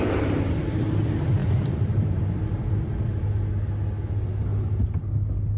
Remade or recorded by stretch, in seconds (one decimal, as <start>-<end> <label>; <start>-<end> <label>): 0.0-1.4 recorded; 1.4-3.5 remade; 3.5-5.6 recorded